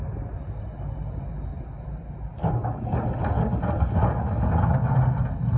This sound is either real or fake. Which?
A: real